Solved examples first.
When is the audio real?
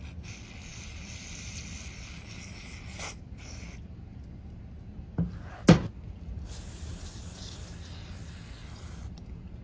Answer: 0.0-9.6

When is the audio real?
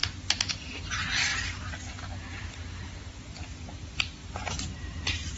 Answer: 0.0-5.4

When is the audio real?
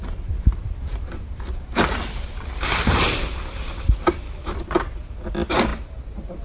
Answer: 0.0-6.4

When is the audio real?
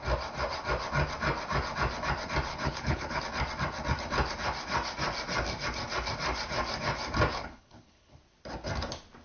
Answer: 0.0-2.5; 3.2-7.3; 8.2-9.2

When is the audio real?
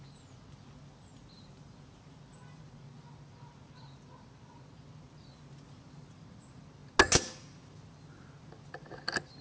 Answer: 0.0-9.4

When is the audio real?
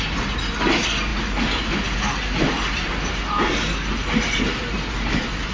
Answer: 0.0-5.5